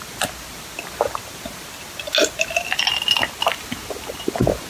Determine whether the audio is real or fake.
real